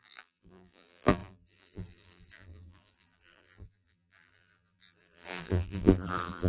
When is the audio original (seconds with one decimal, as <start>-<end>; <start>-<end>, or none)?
none